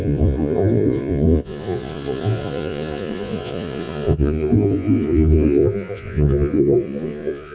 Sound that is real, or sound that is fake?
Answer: fake